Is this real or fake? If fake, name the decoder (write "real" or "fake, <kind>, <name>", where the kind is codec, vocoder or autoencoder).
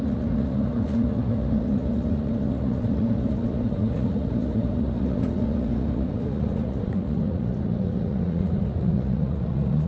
fake, vocoder, Vocos